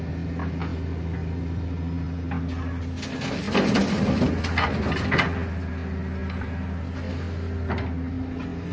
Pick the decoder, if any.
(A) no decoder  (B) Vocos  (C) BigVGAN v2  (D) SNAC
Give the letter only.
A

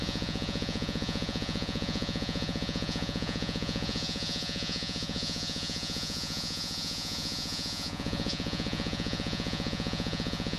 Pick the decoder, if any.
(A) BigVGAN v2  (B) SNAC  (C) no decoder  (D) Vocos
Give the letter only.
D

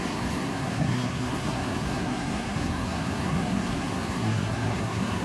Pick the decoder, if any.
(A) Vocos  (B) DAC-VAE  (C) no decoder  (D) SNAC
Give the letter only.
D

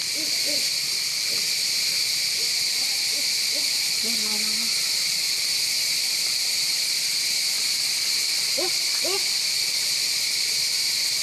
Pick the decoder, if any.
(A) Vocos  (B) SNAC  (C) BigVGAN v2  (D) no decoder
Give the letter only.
D